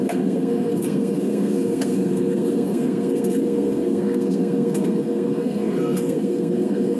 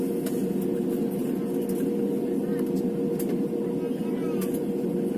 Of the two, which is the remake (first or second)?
first